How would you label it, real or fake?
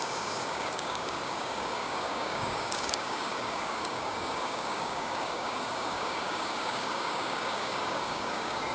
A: fake